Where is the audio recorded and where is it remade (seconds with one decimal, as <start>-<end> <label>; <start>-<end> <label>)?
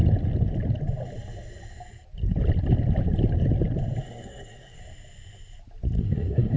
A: 0.0-4.0 recorded; 4.0-4.8 remade; 4.8-6.0 recorded; 6.0-6.6 remade